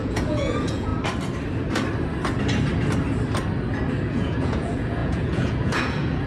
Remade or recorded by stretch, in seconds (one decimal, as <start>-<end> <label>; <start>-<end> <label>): 0.0-0.9 remade; 0.9-4.1 recorded; 4.1-6.3 remade